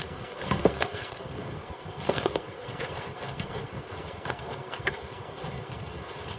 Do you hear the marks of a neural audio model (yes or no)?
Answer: yes